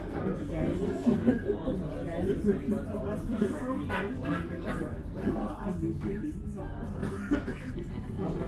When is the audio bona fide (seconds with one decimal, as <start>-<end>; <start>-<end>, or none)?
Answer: 1.9-3.0

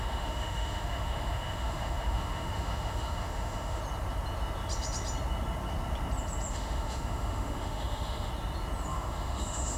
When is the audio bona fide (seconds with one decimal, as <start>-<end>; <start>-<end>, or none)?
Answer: 3.8-6.5; 8.3-8.9

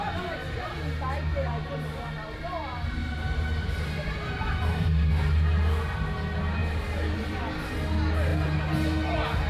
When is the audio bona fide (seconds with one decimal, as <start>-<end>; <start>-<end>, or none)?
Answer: 0.0-3.0; 5.1-6.6; 7.4-9.5